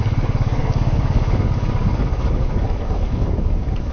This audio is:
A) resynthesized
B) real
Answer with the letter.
A